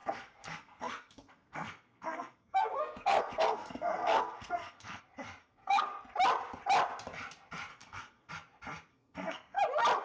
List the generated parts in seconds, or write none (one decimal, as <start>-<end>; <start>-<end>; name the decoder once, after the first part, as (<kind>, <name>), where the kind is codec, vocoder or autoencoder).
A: 0.0-5.0 (codec, SNAC); 5.4-5.9; 7.7-8.3; 8.9-9.6

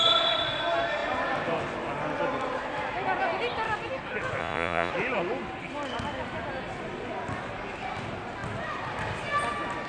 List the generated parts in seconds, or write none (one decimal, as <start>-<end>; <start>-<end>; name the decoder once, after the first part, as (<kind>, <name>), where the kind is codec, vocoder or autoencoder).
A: 4.4-4.9 (vocoder, Vocos)

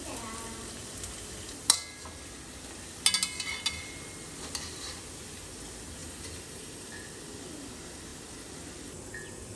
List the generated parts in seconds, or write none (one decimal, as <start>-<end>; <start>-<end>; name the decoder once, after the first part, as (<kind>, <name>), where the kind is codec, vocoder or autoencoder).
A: 6.0-6.9 (vocoder, BigVGAN v2)

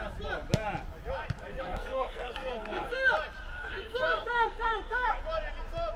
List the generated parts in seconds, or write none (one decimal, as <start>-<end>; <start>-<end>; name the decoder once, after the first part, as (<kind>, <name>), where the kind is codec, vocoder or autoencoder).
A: 1.5-3.1 (codec, SNAC); 3.5-5.2

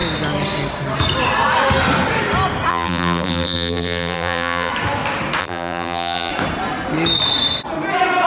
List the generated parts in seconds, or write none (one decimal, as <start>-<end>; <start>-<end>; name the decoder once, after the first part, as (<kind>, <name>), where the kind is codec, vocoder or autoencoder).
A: 2.7-4.7 (vocoder, BigVGAN v2); 5.4-6.3

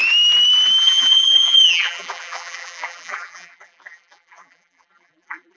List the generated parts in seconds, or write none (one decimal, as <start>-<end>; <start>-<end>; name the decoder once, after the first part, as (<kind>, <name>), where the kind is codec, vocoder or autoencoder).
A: 0.8-5.6 (vocoder, BigVGAN v2)

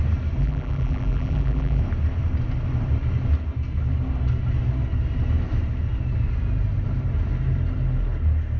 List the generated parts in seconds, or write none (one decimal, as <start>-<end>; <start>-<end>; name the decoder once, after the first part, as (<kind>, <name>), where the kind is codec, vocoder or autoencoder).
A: 0.4-1.8 (vocoder, BigVGAN v2)